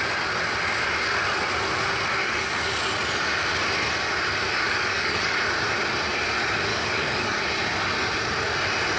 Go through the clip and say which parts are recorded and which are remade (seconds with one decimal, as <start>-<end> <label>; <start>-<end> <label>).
0.0-2.2 recorded; 2.2-2.8 remade; 2.8-4.4 recorded; 4.4-5.4 remade; 5.4-6.7 recorded; 6.7-7.4 remade; 7.4-9.0 recorded